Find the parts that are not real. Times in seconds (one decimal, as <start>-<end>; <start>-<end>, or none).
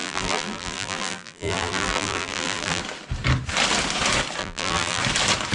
0.0-2.8; 4.4-5.0